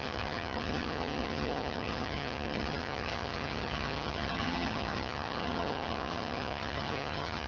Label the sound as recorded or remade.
remade